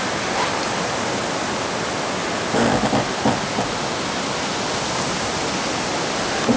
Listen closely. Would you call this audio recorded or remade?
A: recorded